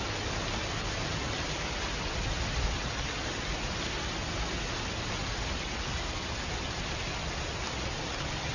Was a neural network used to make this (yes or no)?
no